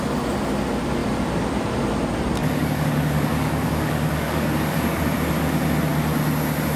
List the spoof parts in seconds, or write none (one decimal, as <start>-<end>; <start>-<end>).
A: 2.4-5.0